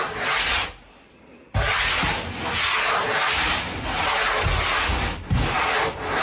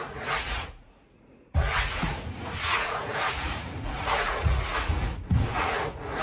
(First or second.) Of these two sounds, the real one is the first